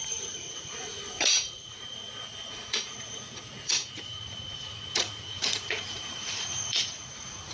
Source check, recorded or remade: remade